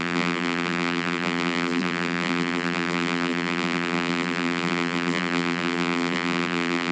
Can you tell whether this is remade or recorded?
remade